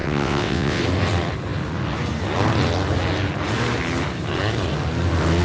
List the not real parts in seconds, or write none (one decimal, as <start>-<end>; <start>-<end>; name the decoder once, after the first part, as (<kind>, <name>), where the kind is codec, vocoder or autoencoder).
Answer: 0.0-0.8 (vocoder, WaveNeXt)